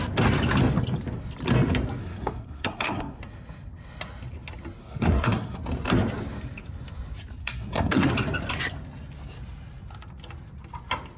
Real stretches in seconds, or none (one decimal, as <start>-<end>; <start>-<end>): 0.0-2.0; 3.2-4.8; 5.6-7.4; 8.1-11.2